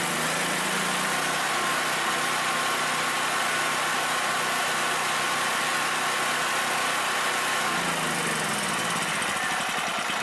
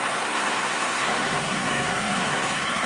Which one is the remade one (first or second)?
second